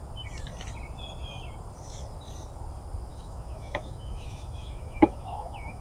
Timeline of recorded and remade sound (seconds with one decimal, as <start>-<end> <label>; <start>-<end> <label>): 0.0-3.1 recorded; 3.1-5.8 remade